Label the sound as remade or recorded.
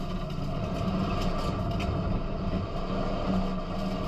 recorded